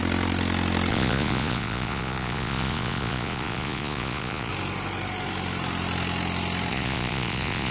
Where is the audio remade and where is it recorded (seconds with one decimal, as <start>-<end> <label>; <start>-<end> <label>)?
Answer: 0.0-0.9 recorded; 0.9-4.5 remade; 4.5-6.7 recorded; 6.7-7.7 remade

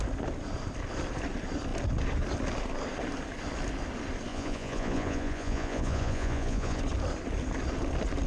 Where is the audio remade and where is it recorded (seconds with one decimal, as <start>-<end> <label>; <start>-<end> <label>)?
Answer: 0.0-4.3 recorded; 4.3-6.8 remade; 6.8-8.3 recorded

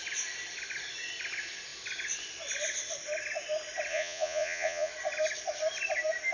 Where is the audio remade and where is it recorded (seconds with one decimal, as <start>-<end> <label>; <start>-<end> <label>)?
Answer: 0.0-3.9 recorded; 3.9-4.9 remade; 4.9-6.3 recorded

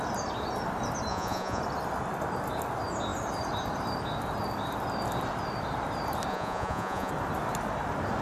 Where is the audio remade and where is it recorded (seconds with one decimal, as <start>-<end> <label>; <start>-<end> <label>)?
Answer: 0.0-1.1 recorded; 1.1-1.6 remade; 1.6-6.3 recorded; 6.3-7.1 remade; 7.1-8.2 recorded

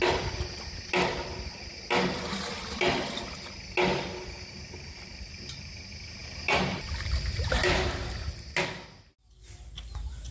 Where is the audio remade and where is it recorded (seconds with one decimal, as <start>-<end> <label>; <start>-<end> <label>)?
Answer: 0.0-10.3 recorded